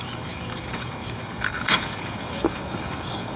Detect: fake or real fake